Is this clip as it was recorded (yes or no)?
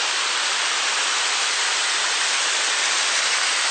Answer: no